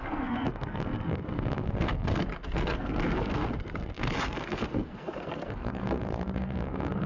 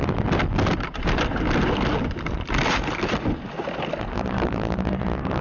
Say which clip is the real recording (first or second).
second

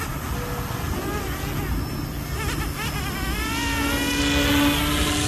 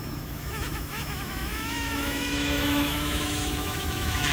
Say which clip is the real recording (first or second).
first